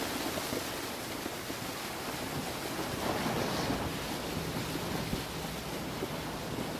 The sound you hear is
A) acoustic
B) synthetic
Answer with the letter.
A